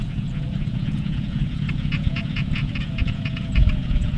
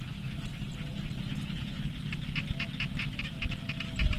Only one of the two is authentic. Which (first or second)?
second